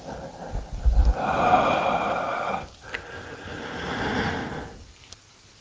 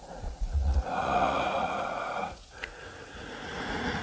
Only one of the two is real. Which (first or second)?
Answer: first